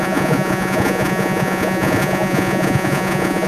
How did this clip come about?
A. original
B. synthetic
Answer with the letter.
B